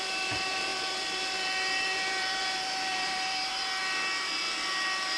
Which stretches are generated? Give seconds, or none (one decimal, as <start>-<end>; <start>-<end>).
0.0-3.8